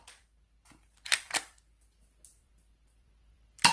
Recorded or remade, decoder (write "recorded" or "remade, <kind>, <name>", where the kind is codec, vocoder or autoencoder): remade, vocoder, BigVGAN v2